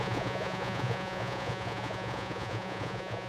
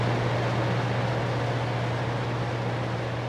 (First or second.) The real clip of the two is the second